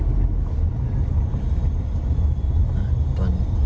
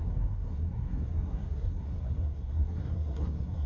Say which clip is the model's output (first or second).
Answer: second